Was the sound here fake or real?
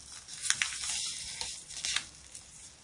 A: real